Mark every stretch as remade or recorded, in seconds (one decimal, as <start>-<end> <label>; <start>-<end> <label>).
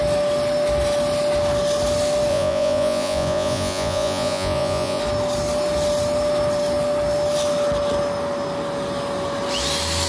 0.0-2.3 recorded; 2.3-5.0 remade; 5.0-10.1 recorded